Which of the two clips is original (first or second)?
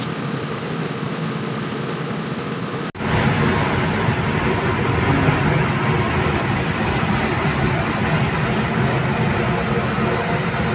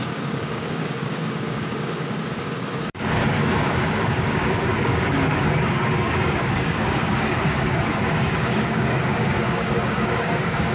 first